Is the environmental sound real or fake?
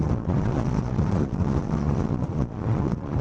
fake